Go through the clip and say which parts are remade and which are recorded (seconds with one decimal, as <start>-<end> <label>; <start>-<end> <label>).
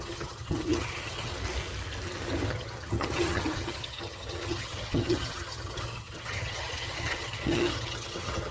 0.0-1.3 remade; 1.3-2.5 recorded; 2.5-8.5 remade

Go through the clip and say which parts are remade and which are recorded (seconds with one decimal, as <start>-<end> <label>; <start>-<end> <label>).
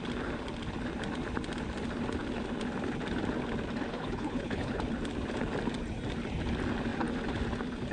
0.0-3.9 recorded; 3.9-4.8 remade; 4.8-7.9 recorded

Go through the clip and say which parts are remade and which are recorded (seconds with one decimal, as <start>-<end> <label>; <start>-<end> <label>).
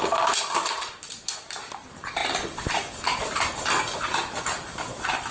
0.0-5.3 recorded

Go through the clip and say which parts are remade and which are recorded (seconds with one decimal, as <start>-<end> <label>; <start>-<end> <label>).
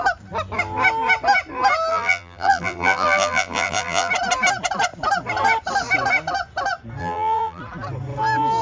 0.0-1.9 recorded; 1.9-4.1 remade; 4.1-7.0 recorded; 7.0-7.6 remade; 7.6-8.6 recorded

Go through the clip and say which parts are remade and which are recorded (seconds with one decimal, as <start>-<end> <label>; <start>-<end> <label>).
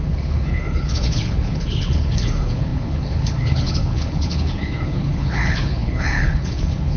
0.0-7.0 remade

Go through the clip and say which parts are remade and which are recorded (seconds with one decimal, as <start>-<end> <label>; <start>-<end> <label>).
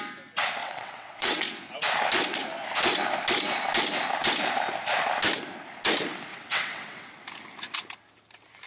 0.0-0.6 recorded; 0.6-1.4 remade; 1.4-6.3 recorded; 6.3-7.1 remade; 7.1-8.7 recorded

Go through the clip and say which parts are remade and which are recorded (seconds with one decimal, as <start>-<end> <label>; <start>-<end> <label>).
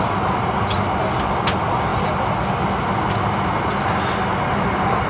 0.0-5.1 recorded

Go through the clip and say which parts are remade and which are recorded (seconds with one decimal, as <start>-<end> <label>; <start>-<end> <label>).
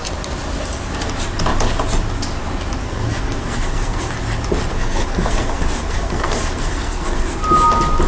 0.0-2.8 recorded; 2.8-4.1 remade; 4.1-4.7 recorded; 4.7-7.4 remade; 7.4-8.1 recorded